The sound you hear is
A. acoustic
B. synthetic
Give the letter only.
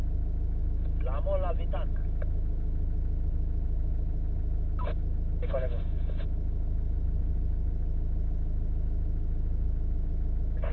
A